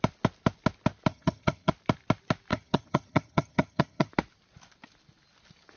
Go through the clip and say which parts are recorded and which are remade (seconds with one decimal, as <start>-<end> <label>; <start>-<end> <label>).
0.0-1.1 recorded; 1.1-1.7 remade; 1.7-2.5 recorded; 2.5-4.1 remade; 4.1-5.8 recorded